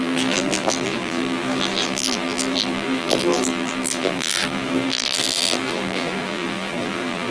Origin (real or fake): fake